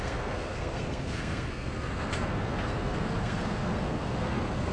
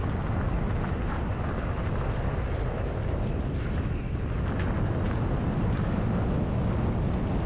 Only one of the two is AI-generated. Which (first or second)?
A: first